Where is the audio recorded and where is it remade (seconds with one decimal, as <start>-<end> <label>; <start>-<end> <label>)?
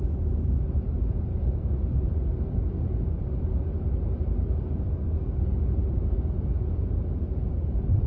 0.0-1.3 recorded; 1.3-1.9 remade; 1.9-4.9 recorded; 4.9-5.5 remade; 5.5-8.1 recorded